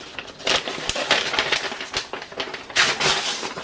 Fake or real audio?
real